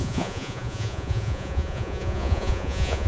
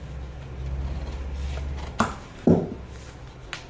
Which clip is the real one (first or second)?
second